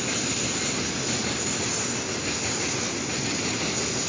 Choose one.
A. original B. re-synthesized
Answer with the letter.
A